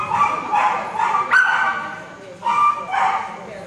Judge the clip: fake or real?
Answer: real